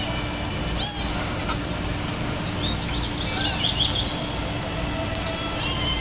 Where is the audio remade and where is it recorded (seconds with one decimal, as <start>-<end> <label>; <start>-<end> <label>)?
0.0-1.4 recorded; 1.4-1.9 remade; 1.9-6.0 recorded